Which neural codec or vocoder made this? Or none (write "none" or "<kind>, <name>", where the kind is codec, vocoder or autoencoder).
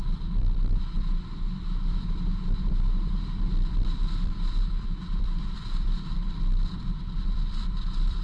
vocoder, BigVGAN v2